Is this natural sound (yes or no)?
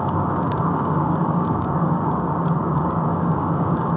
no